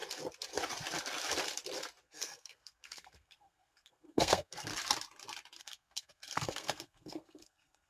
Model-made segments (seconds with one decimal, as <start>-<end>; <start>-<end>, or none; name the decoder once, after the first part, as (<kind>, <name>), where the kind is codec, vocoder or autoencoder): 2.0-4.7 (codec, SNAC); 5.6-7.9